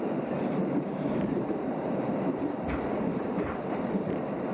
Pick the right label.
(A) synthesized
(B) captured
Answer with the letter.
A